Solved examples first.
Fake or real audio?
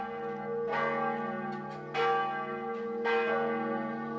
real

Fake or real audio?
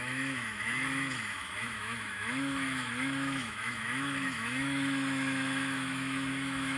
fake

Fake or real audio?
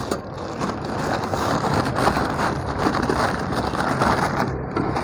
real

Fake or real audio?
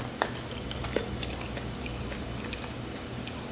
real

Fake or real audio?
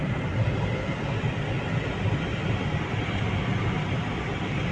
real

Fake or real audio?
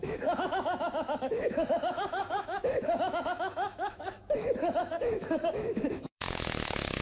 fake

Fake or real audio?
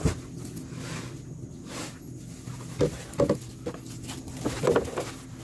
real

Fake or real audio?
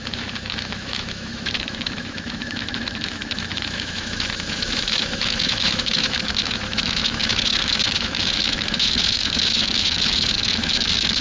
fake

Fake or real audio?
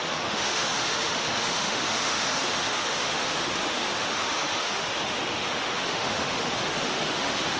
fake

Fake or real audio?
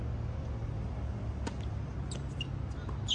real